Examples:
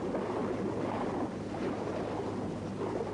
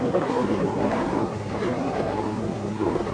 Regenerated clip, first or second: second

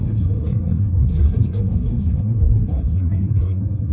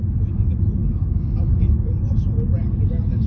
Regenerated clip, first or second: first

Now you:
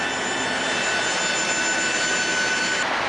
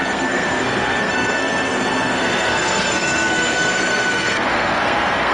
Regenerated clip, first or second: second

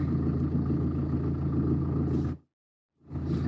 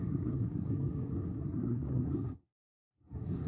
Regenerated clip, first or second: second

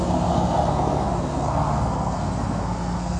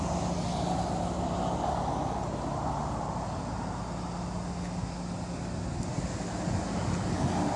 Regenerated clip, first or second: first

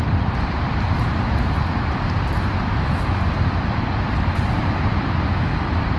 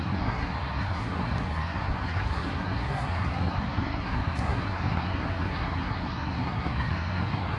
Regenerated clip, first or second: second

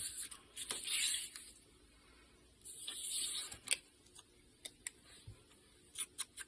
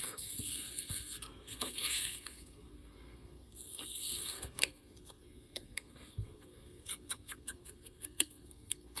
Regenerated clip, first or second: second